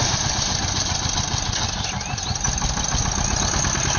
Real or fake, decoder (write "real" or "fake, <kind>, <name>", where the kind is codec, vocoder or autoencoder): real